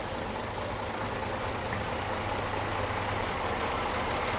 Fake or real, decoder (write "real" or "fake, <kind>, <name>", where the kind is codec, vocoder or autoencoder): real